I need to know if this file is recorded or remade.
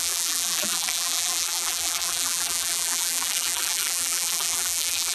remade